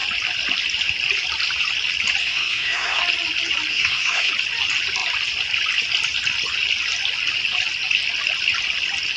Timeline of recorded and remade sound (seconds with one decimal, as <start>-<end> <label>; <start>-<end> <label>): 0.0-2.2 recorded; 2.2-3.0 remade; 3.0-3.7 recorded; 3.7-4.3 remade; 4.3-9.2 recorded